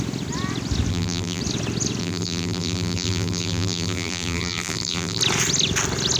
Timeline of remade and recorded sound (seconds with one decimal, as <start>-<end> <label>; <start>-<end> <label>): 0.0-0.9 recorded; 0.9-1.4 remade; 1.4-2.0 recorded; 2.0-5.2 remade; 5.2-6.2 recorded